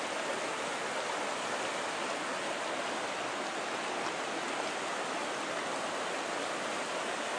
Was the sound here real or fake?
real